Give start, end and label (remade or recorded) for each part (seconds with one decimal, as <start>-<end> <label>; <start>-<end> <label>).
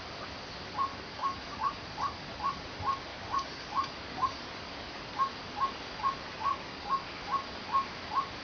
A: 0.0-0.9 recorded; 0.9-1.8 remade; 1.8-3.1 recorded; 3.1-5.3 remade; 5.3-6.5 recorded; 6.5-7.2 remade; 7.2-8.4 recorded